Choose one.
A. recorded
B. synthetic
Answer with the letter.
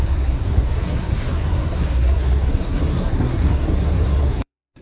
B